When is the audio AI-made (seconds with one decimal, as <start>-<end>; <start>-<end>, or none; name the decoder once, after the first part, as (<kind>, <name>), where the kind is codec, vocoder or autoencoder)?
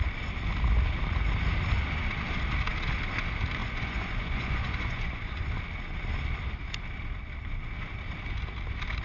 3.6-5.5 (vocoder, Vocos)